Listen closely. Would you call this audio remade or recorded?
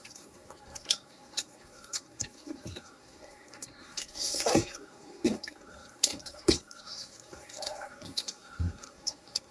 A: remade